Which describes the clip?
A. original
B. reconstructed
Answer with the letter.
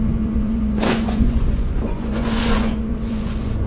B